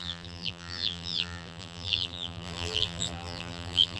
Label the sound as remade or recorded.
remade